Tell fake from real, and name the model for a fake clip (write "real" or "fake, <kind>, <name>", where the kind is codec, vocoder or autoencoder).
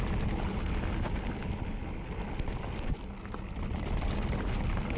real